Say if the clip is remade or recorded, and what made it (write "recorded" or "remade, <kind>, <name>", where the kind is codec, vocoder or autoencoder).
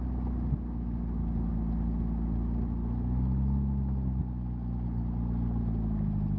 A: recorded